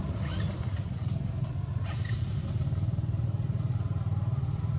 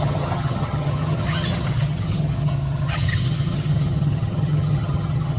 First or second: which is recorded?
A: first